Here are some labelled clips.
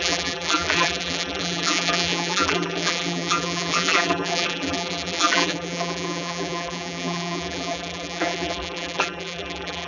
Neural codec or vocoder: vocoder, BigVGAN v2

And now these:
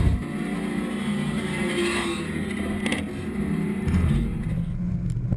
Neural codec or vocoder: none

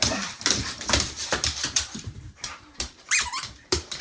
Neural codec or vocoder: vocoder, BigVGAN v2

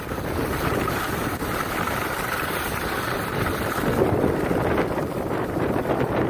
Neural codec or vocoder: vocoder, BigVGAN v2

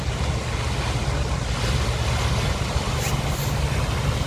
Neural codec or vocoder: none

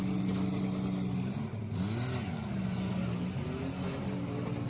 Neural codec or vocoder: none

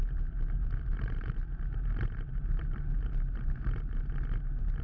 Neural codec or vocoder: vocoder, BigVGAN v2